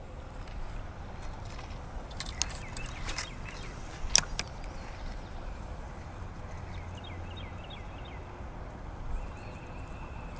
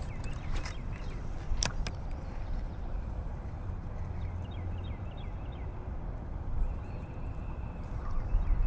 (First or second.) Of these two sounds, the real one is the first